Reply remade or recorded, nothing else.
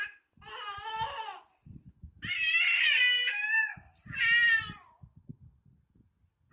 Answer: recorded